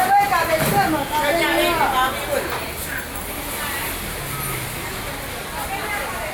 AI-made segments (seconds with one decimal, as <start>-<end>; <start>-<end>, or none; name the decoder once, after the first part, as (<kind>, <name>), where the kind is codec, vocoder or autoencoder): none